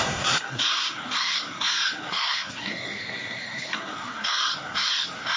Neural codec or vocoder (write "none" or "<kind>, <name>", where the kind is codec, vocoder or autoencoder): codec, SNAC